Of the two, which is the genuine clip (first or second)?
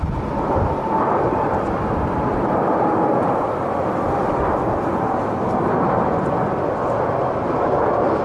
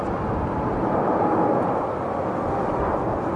second